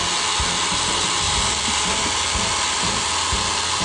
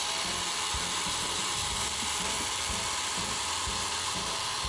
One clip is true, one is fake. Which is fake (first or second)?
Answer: second